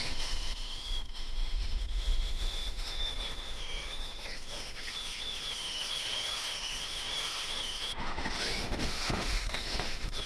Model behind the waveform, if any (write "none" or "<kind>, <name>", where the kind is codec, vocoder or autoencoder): autoencoder, DAC-VAE